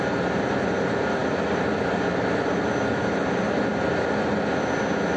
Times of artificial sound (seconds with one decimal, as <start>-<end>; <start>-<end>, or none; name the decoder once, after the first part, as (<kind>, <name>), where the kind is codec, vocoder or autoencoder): none